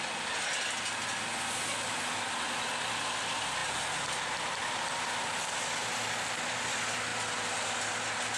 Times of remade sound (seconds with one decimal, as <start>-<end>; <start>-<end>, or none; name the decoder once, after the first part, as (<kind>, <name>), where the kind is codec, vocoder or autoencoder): none